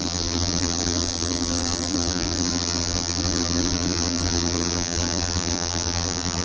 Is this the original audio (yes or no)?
no